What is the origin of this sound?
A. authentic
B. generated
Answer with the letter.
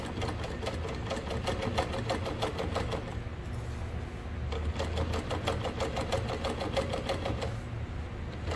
A